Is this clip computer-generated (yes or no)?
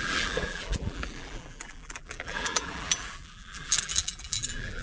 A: yes